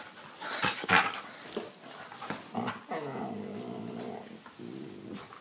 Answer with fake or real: real